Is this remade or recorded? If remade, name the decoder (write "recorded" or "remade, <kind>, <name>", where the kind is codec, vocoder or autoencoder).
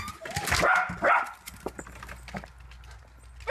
recorded